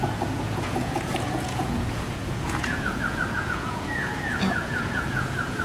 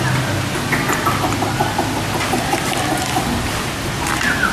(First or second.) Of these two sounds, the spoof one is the first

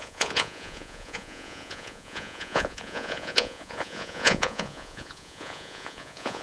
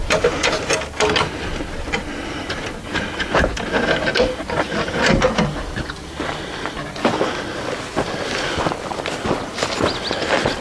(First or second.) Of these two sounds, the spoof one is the first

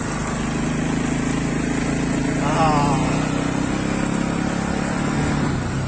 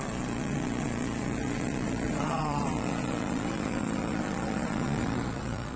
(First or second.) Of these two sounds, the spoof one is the second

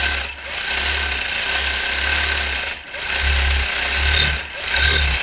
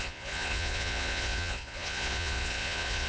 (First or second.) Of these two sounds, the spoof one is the second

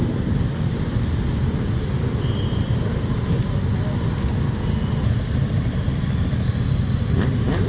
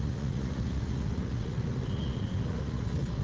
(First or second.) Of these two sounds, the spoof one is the second